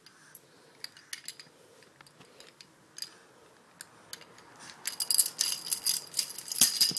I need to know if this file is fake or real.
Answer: real